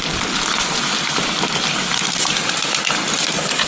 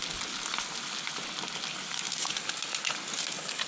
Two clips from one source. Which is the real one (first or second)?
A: second